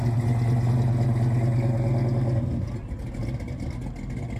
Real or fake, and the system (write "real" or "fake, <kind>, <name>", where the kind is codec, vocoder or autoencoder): real